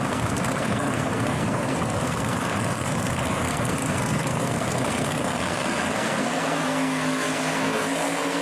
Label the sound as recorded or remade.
remade